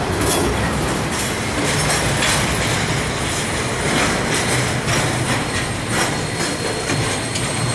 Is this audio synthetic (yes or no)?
no